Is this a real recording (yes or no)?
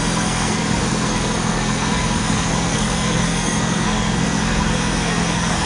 no